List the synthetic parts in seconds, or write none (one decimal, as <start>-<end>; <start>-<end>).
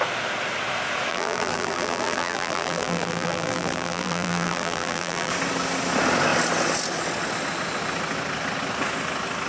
1.1-5.3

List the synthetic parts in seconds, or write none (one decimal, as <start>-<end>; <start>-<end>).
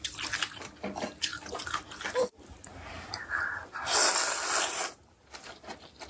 1.3-1.8; 2.7-3.4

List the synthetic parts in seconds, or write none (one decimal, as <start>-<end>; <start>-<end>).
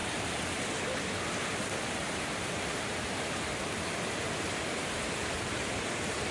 none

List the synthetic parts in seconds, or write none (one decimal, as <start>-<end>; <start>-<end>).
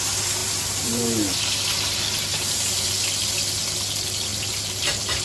0.4-1.3; 2.3-2.9; 4.3-5.2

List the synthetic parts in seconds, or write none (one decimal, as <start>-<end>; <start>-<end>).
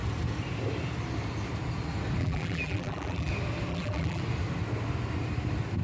2.2-3.3; 3.7-4.2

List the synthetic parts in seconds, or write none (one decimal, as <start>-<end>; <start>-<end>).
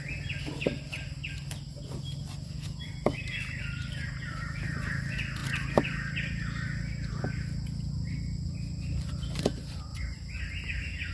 3.6-4.7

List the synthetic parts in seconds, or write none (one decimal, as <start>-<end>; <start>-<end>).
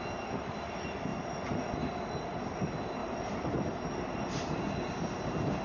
1.1-2.0; 3.0-4.7